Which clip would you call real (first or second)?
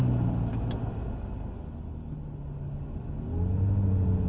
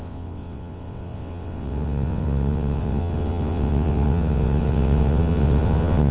first